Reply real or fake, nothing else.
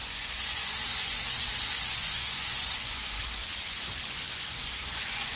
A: fake